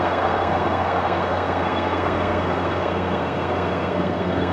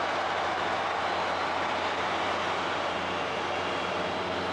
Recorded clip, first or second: second